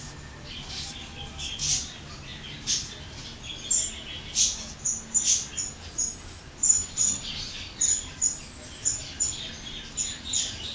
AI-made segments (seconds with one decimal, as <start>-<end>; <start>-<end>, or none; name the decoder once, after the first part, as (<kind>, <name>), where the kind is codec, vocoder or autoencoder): none

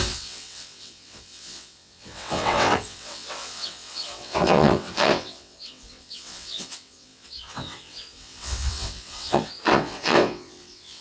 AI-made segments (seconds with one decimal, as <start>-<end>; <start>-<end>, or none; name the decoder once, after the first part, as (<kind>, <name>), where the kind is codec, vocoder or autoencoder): 0.0-11.0 (vocoder, WaveNeXt)